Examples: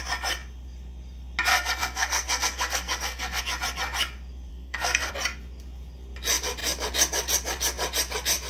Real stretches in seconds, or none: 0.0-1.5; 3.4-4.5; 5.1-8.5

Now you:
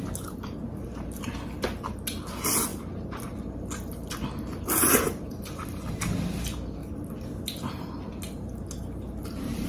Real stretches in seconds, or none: 0.0-9.7

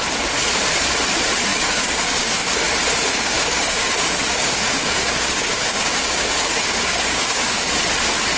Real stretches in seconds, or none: 0.0-1.5; 2.5-3.1; 7.7-8.4

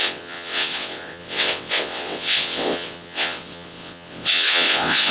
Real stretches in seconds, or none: none

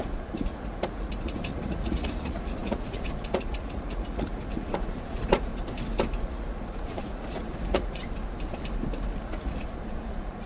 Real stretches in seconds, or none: 5.5-6.2; 8.0-9.2